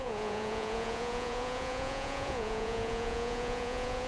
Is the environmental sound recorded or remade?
remade